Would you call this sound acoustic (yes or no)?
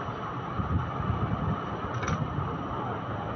yes